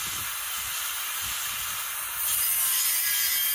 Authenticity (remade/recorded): recorded